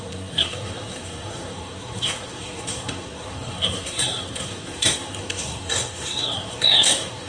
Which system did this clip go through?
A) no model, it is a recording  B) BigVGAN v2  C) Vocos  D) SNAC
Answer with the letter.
D